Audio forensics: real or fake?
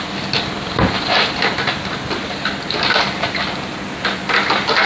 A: real